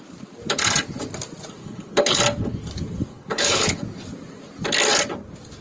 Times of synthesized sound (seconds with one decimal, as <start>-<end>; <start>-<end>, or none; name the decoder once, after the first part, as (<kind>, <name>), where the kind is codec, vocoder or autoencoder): 1.6-2.2 (codec, HILCodec); 3.1-3.8